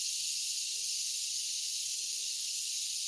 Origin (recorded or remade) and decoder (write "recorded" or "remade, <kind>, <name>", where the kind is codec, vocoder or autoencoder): recorded